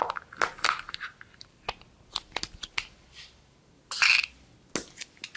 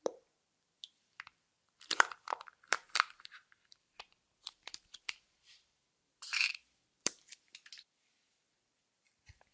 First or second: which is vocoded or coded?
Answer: second